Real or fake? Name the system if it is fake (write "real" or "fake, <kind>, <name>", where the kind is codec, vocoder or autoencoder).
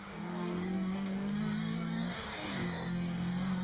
fake, codec, DAC